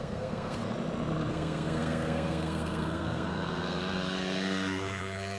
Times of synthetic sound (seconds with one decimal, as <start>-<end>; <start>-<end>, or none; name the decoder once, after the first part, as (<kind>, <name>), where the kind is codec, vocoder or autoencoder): 0.0-0.6 (codec, SNAC); 1.3-5.4